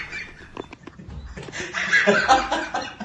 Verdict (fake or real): real